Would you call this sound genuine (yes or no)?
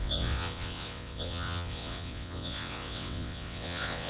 no